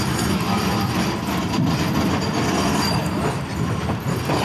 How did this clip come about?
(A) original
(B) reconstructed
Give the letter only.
A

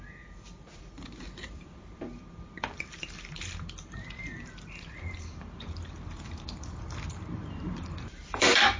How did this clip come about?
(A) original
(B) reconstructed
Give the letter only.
B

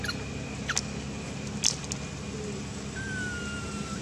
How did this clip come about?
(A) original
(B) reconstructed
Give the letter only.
A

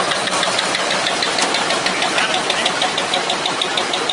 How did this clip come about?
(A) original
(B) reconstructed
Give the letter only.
A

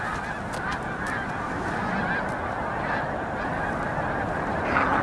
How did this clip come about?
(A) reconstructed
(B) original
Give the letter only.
B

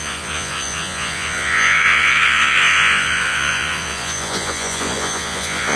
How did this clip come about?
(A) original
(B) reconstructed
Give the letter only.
B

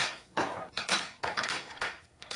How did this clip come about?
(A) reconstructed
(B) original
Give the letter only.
A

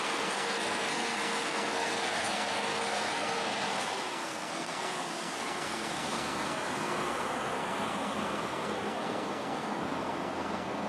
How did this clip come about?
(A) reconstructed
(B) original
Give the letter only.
A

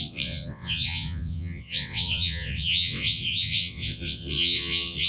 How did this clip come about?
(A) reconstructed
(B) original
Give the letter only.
A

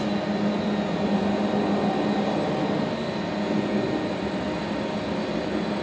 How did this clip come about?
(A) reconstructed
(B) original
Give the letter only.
B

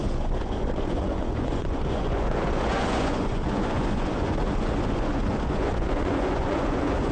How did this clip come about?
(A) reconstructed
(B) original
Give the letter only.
A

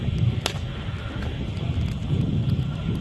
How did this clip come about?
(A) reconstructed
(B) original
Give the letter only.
B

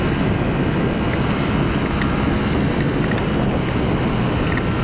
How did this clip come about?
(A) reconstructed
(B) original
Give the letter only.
B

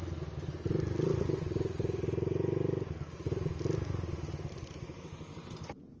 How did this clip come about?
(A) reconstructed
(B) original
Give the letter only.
B